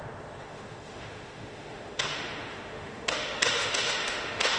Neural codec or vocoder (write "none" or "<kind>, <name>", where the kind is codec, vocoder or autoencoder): autoencoder, DAC-VAE